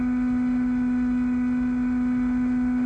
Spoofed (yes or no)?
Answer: no